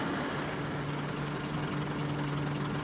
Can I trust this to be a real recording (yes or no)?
yes